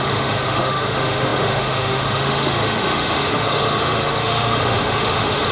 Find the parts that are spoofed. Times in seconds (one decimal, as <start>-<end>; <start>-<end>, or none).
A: 0.0-5.5